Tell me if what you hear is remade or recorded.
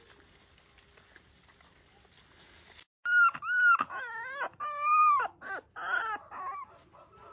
recorded